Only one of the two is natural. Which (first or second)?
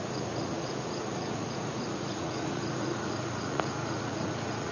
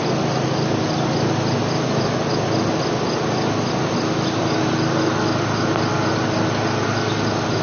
second